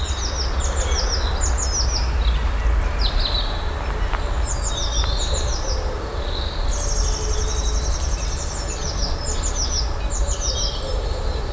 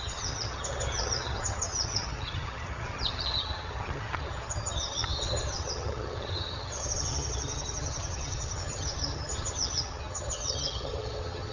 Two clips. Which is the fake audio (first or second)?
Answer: second